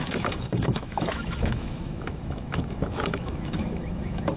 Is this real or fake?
fake